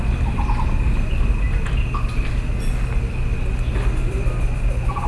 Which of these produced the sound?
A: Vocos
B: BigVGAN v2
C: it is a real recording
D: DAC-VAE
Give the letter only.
C